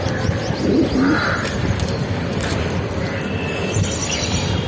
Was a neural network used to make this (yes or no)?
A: no